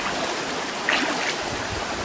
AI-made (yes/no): no